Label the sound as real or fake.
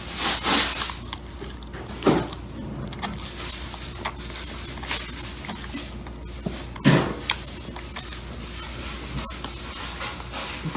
real